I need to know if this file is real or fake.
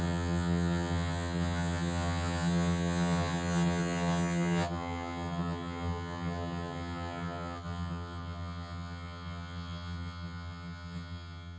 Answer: fake